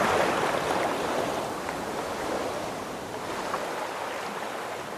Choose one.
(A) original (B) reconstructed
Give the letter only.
A